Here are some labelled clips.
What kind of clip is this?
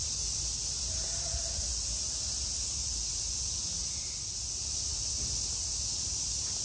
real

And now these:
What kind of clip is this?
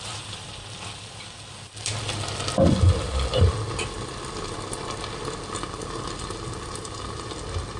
real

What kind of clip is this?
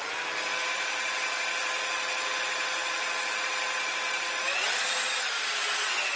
real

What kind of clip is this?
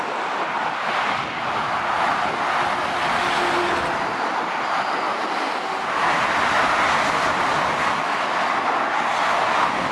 real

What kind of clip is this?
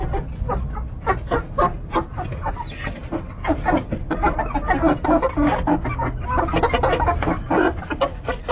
real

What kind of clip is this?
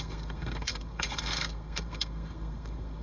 fake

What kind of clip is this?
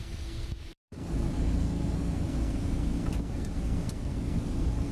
fake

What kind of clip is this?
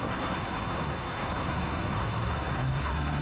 fake